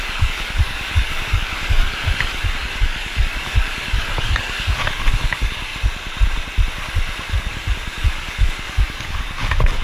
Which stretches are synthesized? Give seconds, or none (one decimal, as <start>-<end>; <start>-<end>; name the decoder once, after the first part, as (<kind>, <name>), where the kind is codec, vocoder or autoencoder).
0.0-5.7 (codec, DAC); 7.4-9.8